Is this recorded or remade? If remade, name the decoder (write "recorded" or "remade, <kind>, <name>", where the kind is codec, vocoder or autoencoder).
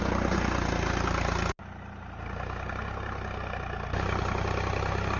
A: recorded